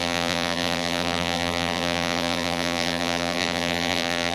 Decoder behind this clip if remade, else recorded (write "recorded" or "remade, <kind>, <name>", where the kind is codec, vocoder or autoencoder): remade, vocoder, BigVGAN v2